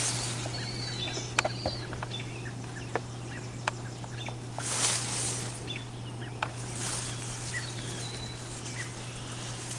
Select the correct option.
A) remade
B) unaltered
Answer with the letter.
B